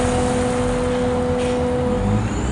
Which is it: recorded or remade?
recorded